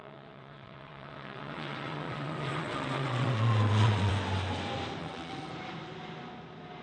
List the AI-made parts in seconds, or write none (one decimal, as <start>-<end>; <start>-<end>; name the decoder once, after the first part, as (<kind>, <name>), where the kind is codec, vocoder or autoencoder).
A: 0.0-4.1 (vocoder, WaveNeXt); 5.0-5.5